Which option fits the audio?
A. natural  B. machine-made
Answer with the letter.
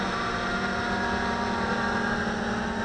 A